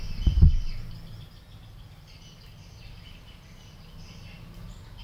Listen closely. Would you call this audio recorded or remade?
remade